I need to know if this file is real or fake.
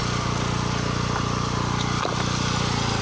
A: real